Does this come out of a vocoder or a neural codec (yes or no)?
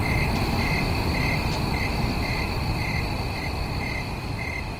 no